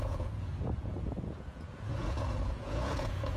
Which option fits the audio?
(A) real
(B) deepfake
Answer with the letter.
B